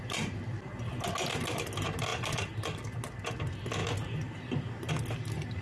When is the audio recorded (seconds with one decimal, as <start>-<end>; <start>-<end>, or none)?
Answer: 0.0-5.6